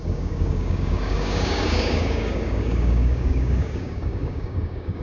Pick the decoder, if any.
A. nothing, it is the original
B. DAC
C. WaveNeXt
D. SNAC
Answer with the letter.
B